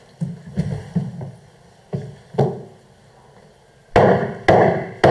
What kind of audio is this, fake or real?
real